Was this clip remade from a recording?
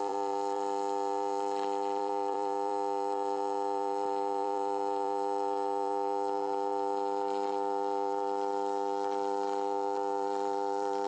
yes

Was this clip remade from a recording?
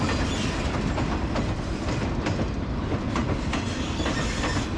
no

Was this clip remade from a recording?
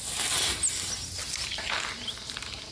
no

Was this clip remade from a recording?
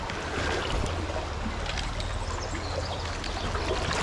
no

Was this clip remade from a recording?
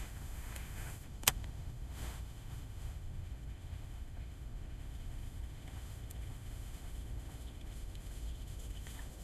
yes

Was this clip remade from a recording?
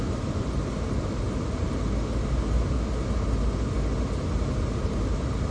no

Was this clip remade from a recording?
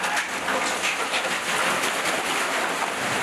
no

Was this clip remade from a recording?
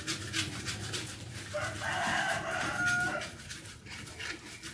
no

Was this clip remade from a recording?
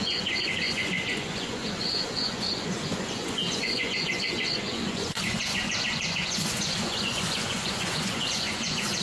yes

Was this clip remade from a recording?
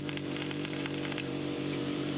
yes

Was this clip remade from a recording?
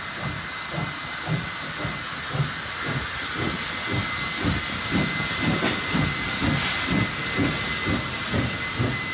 no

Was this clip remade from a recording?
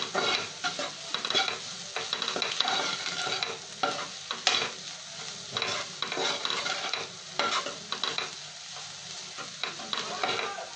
no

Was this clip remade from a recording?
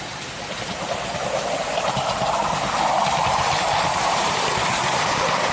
no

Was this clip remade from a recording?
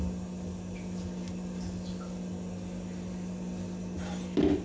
no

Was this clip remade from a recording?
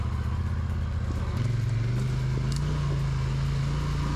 no